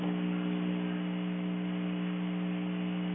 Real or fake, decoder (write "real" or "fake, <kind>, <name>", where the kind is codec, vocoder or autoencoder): real